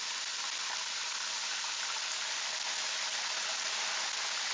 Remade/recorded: recorded